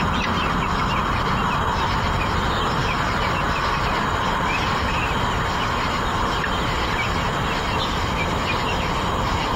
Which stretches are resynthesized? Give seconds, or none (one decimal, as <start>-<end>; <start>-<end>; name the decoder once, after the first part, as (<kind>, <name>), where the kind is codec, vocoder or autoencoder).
2.8-3.4 (vocoder, BigVGAN v2)